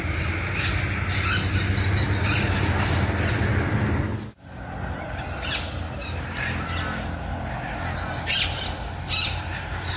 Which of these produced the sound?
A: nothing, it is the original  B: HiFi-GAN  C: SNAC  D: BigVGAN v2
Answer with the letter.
A